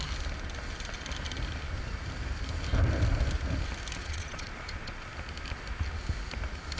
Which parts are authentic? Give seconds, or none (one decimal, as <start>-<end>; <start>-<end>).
0.0-4.0; 5.1-6.8